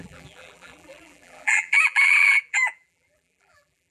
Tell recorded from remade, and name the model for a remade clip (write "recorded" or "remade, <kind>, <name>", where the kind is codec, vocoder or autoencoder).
remade, vocoder, BigVGAN v2